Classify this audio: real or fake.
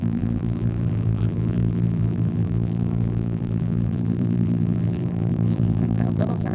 fake